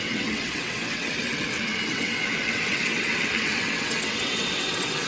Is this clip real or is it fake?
fake